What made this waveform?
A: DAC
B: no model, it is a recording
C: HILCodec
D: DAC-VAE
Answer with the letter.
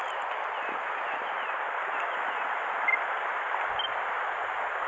B